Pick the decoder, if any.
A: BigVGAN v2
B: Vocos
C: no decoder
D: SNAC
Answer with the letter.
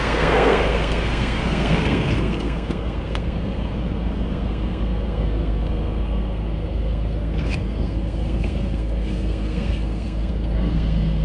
D